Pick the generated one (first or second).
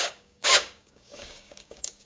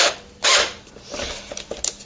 first